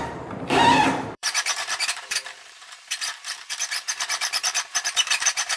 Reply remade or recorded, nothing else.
remade